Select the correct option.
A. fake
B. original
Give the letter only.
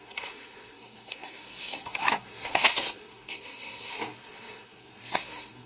A